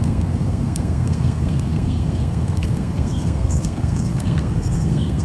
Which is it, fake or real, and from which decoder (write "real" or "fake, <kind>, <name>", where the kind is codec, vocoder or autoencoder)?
fake, codec, SNAC